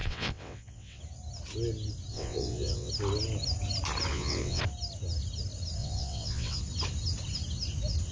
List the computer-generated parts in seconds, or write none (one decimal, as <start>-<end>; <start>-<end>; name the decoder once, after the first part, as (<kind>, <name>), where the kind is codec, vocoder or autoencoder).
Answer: 0.0-1.0 (vocoder, WaveNeXt); 2.1-2.9; 4.1-4.6; 5.8-6.6